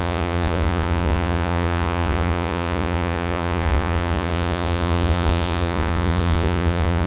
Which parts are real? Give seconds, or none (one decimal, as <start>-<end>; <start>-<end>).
none